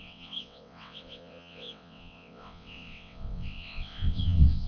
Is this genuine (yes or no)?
no